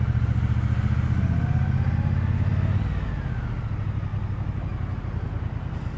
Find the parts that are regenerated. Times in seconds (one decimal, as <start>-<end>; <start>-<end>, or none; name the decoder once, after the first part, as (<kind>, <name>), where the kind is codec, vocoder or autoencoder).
none